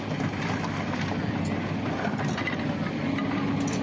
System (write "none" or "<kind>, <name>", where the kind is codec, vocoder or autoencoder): none